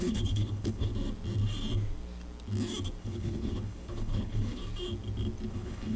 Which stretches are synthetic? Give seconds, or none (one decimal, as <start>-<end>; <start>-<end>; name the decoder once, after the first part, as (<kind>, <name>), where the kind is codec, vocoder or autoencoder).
0.0-0.9 (codec, HILCodec); 3.0-4.6; 5.5-6.0